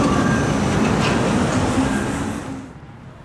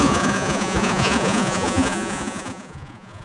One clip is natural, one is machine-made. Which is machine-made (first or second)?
second